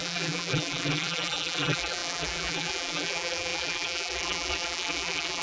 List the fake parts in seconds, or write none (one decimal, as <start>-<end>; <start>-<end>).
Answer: 0.0-5.4